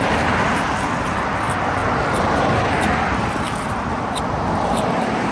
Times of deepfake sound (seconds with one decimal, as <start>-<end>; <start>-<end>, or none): 0.0-5.3